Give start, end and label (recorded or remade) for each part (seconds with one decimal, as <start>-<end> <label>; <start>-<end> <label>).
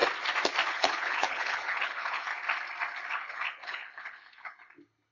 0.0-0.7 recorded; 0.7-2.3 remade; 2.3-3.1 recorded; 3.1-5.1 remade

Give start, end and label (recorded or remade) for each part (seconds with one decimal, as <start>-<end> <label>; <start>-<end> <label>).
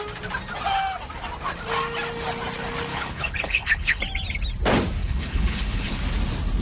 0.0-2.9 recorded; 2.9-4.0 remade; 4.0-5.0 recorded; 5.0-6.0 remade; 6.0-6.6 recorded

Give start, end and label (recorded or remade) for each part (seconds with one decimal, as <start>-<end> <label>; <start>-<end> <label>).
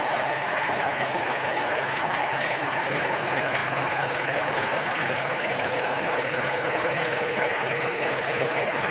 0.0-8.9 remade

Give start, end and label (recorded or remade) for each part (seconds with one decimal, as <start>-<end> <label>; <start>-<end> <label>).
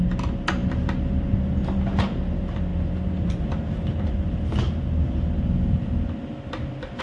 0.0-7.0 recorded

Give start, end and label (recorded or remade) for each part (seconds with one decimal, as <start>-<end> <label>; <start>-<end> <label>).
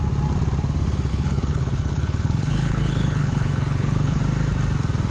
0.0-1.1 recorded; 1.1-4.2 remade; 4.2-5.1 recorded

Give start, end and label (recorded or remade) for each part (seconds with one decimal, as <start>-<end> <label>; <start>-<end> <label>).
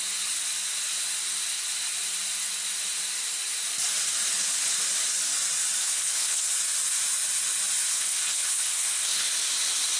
0.0-5.8 recorded; 5.8-6.5 remade; 6.5-7.9 recorded; 7.9-9.3 remade; 9.3-10.0 recorded